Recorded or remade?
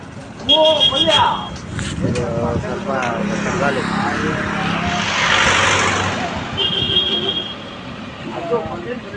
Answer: recorded